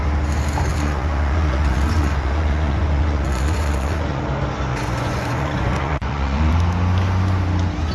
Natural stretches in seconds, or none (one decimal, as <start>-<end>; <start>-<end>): 0.0-0.7; 4.2-4.7; 6.5-7.9